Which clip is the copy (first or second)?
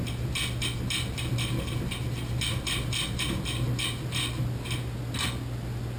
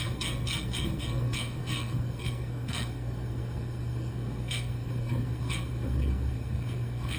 second